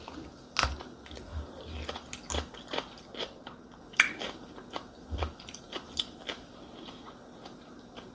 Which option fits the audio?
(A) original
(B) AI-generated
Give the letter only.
A